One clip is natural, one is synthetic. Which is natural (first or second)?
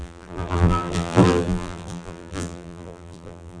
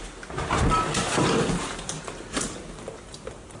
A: second